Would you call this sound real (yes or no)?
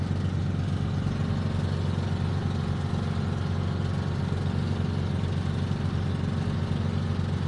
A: yes